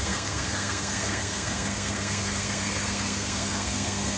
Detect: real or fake fake